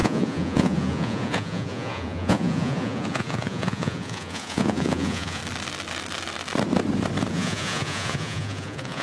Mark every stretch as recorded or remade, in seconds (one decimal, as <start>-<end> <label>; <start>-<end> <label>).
0.0-5.4 remade; 5.4-7.3 recorded; 7.3-9.0 remade

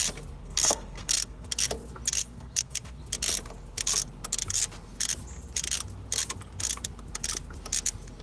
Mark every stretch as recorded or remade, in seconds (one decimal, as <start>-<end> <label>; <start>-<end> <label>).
0.0-0.4 recorded; 0.4-1.5 remade; 1.5-2.2 recorded; 2.2-3.0 remade; 3.0-8.2 recorded

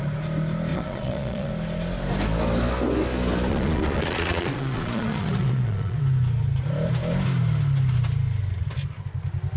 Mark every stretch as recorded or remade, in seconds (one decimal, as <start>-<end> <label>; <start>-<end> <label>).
0.0-0.7 recorded; 0.7-1.5 remade; 1.5-3.5 recorded; 3.5-6.0 remade; 6.0-9.6 recorded

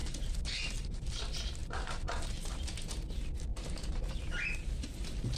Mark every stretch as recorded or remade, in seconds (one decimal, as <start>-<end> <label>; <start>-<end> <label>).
0.0-1.1 remade; 1.1-1.6 recorded; 1.6-2.7 remade; 2.7-3.5 recorded; 3.5-4.7 remade; 4.7-5.4 recorded

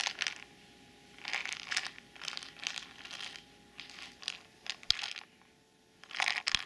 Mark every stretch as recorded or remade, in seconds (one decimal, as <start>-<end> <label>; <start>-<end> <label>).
0.0-6.7 recorded

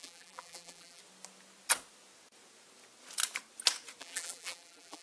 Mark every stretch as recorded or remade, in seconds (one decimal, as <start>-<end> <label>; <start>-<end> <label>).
0.0-1.0 remade; 1.0-4.0 recorded; 4.0-5.0 remade